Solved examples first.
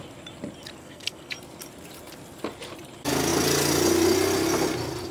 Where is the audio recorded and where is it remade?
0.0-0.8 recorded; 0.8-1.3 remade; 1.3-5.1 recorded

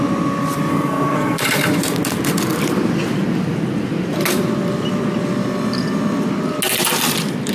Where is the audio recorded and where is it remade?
0.0-0.7 recorded; 0.7-1.4 remade; 1.4-7.5 recorded